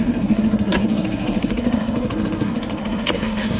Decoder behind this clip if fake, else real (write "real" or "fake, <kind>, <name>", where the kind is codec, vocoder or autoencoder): fake, codec, SNAC